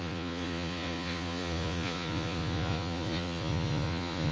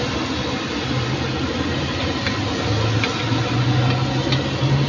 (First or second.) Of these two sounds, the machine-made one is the first